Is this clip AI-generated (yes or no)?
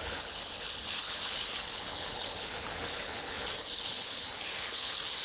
yes